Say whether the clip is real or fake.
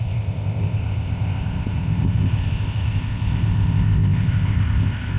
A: fake